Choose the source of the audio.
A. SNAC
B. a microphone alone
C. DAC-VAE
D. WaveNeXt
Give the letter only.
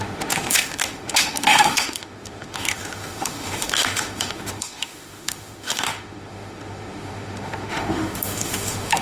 C